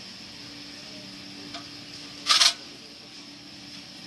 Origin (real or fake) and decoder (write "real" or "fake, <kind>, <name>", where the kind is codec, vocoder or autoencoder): fake, vocoder, BigVGAN v2